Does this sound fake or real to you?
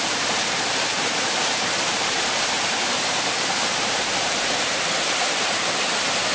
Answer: fake